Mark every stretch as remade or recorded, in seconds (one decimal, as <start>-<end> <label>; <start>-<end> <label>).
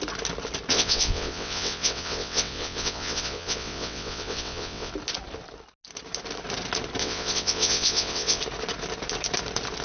0.0-0.7 recorded; 0.7-4.9 remade; 4.9-7.0 recorded; 7.0-8.4 remade; 8.4-9.8 recorded